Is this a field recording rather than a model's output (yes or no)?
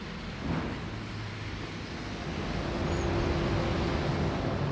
yes